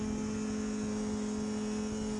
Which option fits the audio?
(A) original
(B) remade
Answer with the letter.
A